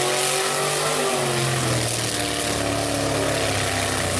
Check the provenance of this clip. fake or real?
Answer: real